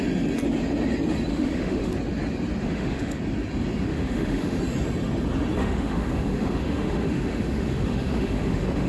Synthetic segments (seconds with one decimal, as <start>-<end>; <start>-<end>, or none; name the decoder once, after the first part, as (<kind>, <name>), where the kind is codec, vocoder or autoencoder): 1.3-1.9 (autoencoder, DAC-VAE); 2.6-3.2; 3.9-4.6; 5.6-8.9